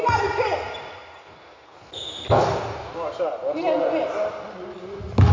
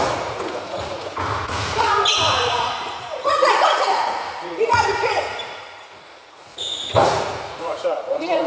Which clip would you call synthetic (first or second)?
second